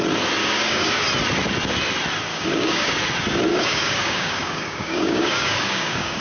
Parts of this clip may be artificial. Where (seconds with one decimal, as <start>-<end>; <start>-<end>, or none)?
0.4-1.0; 2.3-2.9; 3.5-6.2